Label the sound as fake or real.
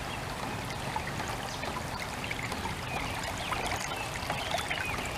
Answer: real